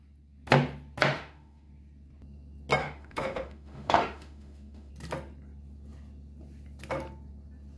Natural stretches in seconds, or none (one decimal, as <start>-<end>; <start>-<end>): 0.0-1.1; 1.7-2.8; 4.9-7.8